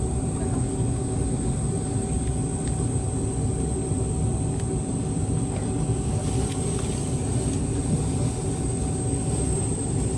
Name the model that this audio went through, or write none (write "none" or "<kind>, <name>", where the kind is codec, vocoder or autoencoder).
none